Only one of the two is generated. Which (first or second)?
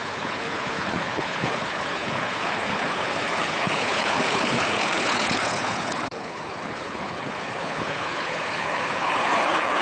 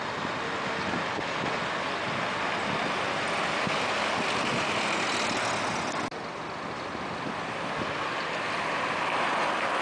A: first